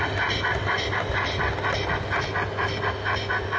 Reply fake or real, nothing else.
real